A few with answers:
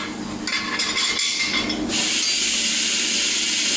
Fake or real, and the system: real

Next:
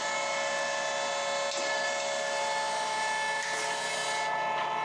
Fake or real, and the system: real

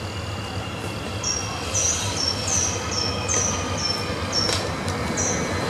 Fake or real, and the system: real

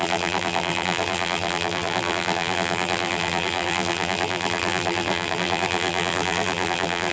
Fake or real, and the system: fake, vocoder, BigVGAN v2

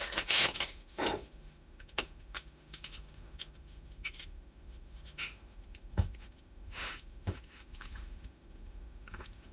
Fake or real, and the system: fake, autoencoder, DAC-VAE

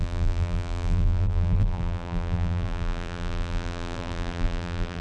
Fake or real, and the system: fake, vocoder, BigVGAN v2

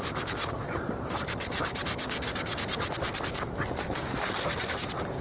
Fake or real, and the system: real